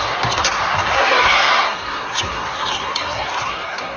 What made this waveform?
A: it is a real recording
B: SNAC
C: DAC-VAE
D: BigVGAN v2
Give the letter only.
B